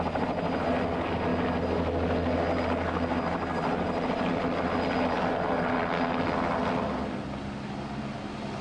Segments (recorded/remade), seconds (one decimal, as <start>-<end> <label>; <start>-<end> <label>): 0.0-8.6 recorded